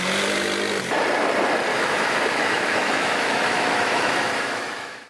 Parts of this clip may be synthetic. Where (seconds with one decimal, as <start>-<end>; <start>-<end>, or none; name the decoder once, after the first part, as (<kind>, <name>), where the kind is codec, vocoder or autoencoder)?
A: 1.7-5.1 (autoencoder, DAC-VAE)